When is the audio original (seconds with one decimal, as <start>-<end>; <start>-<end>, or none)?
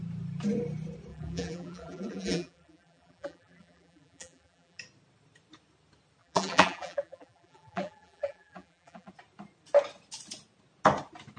0.0-1.1; 4.8-6.2; 9.1-11.4